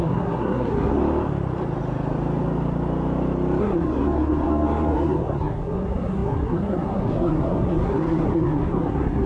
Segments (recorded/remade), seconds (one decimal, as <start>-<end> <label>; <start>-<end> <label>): 0.0-1.0 remade; 1.0-3.6 recorded; 3.6-9.3 remade